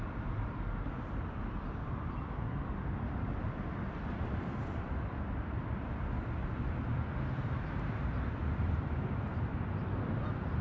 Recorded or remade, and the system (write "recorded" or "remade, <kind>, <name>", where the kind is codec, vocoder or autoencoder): remade, vocoder, BigVGAN v2